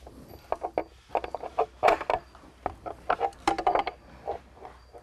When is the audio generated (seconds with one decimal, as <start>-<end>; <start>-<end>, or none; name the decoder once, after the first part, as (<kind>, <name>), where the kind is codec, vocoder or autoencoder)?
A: none